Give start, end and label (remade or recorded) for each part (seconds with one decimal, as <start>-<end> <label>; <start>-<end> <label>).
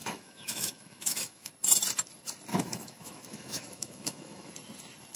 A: 0.0-1.5 remade; 1.5-2.5 recorded; 2.5-4.5 remade; 4.5-5.2 recorded